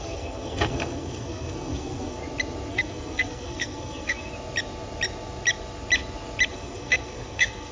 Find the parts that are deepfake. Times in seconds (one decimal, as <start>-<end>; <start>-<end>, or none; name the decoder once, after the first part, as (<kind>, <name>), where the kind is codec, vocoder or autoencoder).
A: 0.0-2.2 (codec, SNAC); 2.7-4.3; 6.5-7.7